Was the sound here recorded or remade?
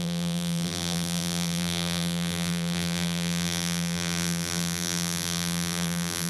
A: remade